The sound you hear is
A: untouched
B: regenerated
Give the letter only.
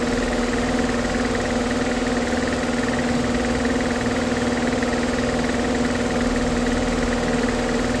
A